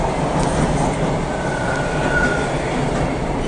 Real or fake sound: real